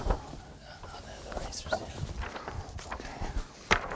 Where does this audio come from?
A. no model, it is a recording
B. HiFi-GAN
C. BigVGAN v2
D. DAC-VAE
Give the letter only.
A